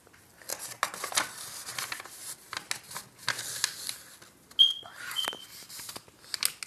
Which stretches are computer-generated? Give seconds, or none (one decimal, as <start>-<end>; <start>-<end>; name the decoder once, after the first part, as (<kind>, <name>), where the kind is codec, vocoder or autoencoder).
none